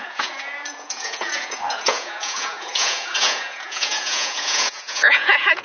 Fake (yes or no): yes